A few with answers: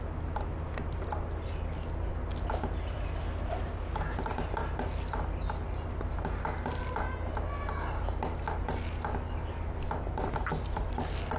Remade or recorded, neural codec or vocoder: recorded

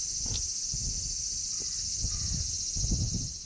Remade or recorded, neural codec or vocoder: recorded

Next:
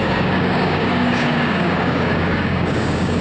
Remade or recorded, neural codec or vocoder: remade, codec, DAC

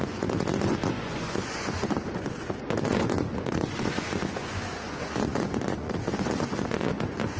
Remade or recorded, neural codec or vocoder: remade, vocoder, Vocos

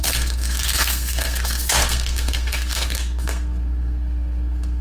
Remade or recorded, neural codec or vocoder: remade, codec, SNAC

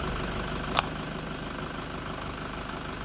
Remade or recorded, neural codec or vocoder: recorded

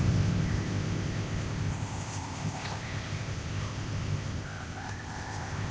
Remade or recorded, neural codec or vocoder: remade, codec, ZipCodec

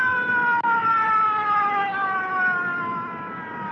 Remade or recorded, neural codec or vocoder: recorded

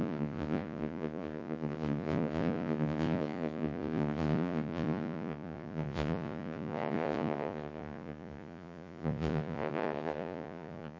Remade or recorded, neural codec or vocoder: remade, vocoder, Vocos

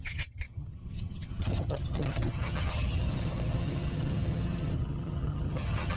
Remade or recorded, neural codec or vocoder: remade, vocoder, HiFi-GAN